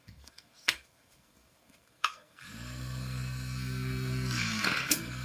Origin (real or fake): fake